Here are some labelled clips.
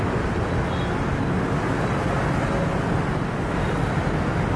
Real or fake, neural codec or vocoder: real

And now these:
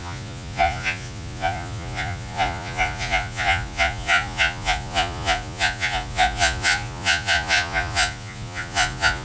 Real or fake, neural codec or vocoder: fake, vocoder, Vocos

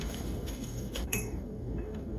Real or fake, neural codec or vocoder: fake, codec, DAC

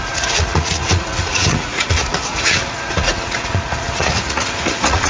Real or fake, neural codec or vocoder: fake, vocoder, Vocos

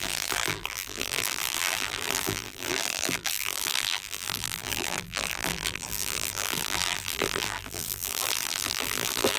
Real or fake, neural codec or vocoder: fake, vocoder, BigVGAN v2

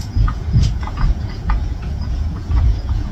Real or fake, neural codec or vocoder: fake, vocoder, Vocos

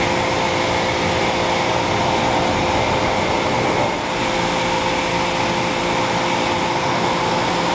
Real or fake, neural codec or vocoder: real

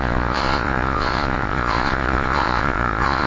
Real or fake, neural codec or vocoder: fake, vocoder, Vocos